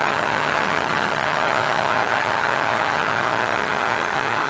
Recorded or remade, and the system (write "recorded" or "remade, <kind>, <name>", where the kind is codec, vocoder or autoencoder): remade, vocoder, HiFi-GAN